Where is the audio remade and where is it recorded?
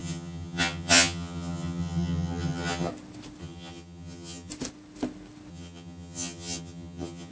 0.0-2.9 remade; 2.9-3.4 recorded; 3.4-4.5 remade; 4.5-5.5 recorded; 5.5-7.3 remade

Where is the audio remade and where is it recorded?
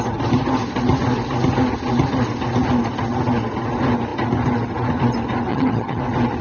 0.0-5.5 recorded; 5.5-6.0 remade; 6.0-6.4 recorded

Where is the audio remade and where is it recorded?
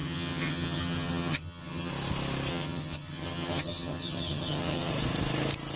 0.0-1.9 remade; 1.9-2.5 recorded; 2.5-4.9 remade; 4.9-5.8 recorded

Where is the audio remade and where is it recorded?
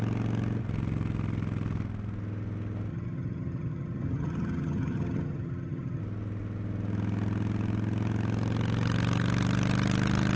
0.0-2.9 recorded; 2.9-6.0 remade; 6.0-10.4 recorded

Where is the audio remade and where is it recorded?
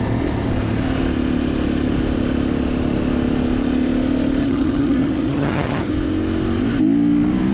0.0-4.4 recorded; 4.4-5.9 remade; 5.9-7.5 recorded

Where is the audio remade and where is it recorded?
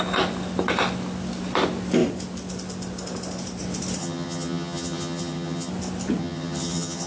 0.0-4.0 recorded; 4.0-5.7 remade; 5.7-6.2 recorded; 6.2-7.1 remade